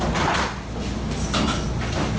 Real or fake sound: real